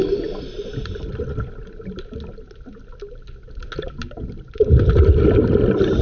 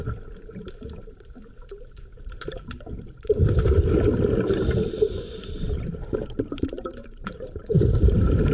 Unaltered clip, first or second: first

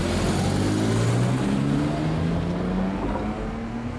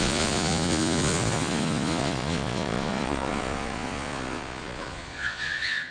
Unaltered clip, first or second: first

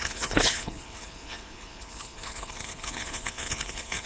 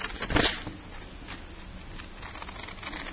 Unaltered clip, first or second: second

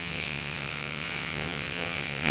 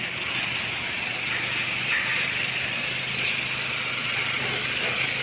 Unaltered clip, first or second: second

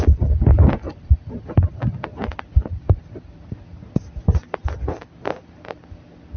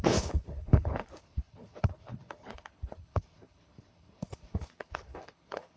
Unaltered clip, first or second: first